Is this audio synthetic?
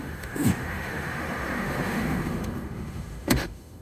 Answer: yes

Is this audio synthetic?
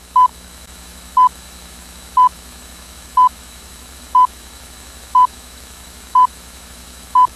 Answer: yes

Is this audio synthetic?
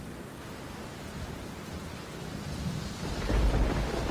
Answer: no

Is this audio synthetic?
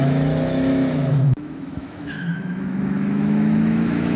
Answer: yes